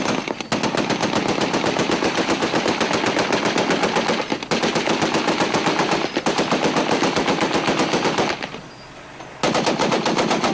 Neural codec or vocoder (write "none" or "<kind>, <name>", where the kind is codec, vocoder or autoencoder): none